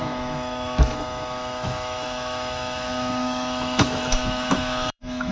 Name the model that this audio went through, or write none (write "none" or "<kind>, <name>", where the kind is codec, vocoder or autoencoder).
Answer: autoencoder, DAC-VAE